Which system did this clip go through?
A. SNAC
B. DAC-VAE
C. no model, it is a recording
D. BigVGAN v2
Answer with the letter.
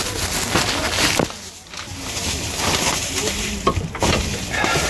C